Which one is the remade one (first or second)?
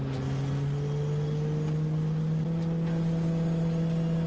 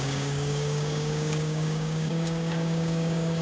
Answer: second